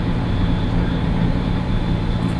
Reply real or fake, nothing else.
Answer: fake